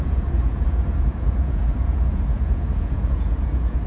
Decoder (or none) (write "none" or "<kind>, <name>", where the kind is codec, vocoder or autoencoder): vocoder, Vocos